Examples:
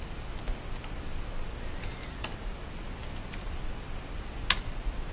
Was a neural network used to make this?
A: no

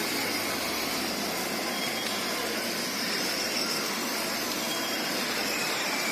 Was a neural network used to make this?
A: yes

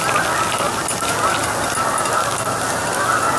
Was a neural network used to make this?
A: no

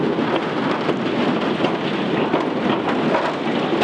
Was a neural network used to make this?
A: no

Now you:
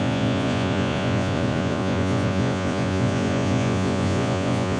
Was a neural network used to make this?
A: yes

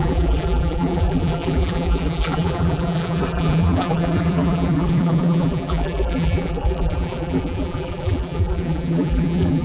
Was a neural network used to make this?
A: yes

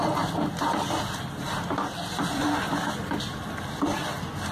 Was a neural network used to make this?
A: no